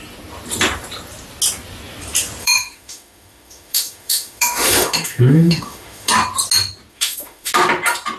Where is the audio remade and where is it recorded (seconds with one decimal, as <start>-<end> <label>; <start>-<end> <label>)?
0.0-2.4 recorded; 2.4-6.1 remade; 6.1-6.9 recorded; 6.9-7.5 remade; 7.5-8.2 recorded